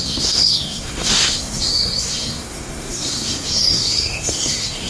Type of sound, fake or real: fake